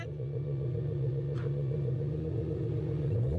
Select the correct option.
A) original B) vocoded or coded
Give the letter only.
B